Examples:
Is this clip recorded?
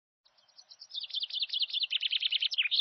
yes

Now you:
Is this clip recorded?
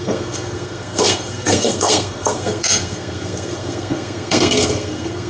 no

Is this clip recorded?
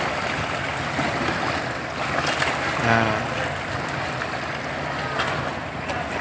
yes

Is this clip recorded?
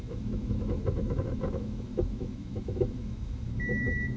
no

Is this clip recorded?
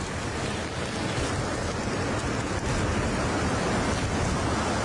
yes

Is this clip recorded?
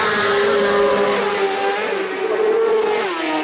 yes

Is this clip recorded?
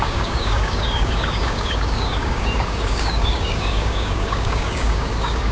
no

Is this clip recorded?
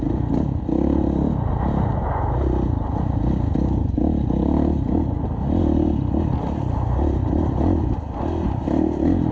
yes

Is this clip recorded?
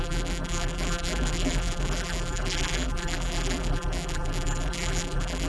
no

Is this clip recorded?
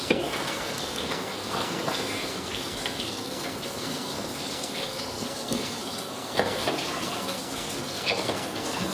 no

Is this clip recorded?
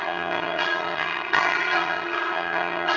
no